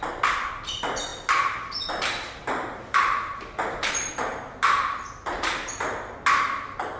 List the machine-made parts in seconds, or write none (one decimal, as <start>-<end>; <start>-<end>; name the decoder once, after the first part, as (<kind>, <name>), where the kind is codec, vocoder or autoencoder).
none